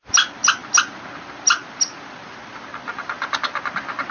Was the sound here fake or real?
fake